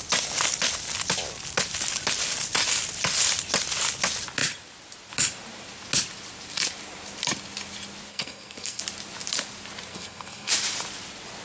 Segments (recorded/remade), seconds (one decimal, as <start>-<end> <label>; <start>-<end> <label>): 0.0-8.1 recorded; 8.1-8.8 remade; 8.8-9.9 recorded; 9.9-10.5 remade; 10.5-11.4 recorded